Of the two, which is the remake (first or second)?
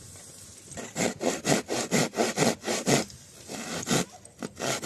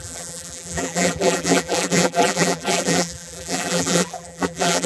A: second